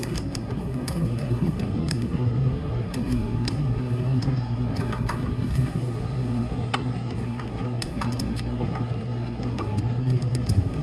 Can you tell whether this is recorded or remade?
remade